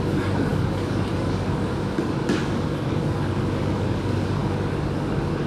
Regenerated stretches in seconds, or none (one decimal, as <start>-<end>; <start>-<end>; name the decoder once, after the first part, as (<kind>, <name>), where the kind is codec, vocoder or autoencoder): 0.0-5.5 (codec, DAC)